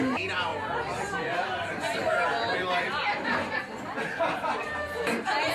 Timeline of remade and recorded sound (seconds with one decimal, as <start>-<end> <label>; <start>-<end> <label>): 0.0-5.5 recorded